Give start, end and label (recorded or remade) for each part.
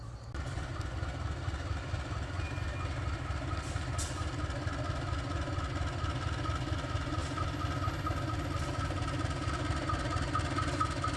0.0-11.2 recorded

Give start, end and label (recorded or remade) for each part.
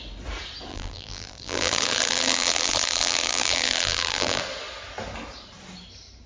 0.0-0.7 recorded; 0.7-4.4 remade; 4.4-6.3 recorded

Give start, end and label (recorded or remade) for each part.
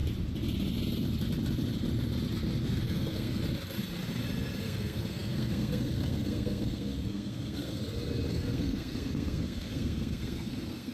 0.0-2.6 recorded; 2.6-3.4 remade; 3.4-4.6 recorded; 4.6-7.8 remade; 7.8-8.3 recorded; 8.3-10.9 remade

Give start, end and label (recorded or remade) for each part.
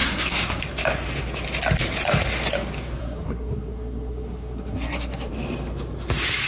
0.0-0.6 remade; 0.6-3.0 recorded; 3.0-5.3 remade; 5.3-6.5 recorded